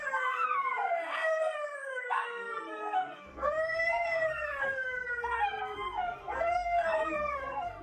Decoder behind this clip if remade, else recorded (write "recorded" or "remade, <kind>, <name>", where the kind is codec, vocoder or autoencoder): remade, codec, SNAC